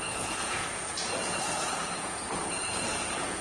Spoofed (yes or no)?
yes